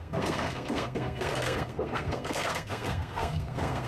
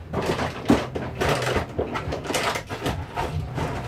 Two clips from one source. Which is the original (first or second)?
second